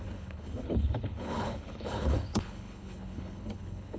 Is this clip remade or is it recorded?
remade